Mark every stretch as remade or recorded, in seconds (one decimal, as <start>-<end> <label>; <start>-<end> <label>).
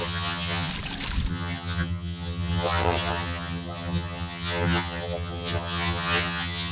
0.0-0.7 remade; 0.7-1.3 recorded; 1.3-6.7 remade